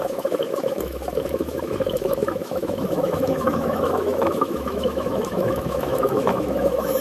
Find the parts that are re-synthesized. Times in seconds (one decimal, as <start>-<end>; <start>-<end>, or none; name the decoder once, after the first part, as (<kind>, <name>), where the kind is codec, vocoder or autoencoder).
0.0-7.0 (autoencoder, DAC-VAE)